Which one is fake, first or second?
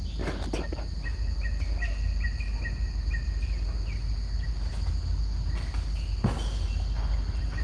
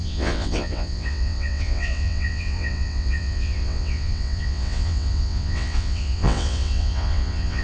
second